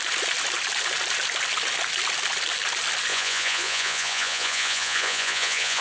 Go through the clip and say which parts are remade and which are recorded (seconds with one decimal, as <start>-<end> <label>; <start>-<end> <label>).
0.0-3.1 recorded; 3.1-5.8 remade